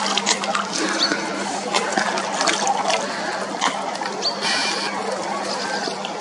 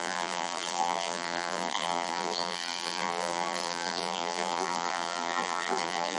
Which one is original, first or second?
first